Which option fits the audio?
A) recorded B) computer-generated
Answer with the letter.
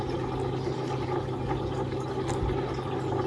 A